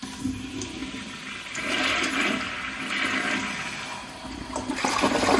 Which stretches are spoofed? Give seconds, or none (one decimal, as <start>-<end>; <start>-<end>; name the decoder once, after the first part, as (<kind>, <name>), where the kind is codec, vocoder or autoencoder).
none